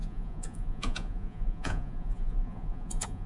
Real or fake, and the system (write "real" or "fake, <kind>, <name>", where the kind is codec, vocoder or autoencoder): fake, vocoder, Vocos